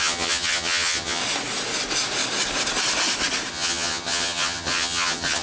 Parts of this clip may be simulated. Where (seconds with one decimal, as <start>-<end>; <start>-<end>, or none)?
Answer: 0.0-1.2; 3.5-5.4